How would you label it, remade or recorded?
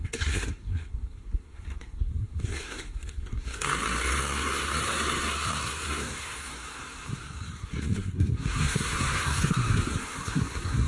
remade